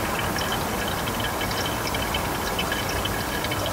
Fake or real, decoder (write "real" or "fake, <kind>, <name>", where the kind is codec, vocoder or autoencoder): real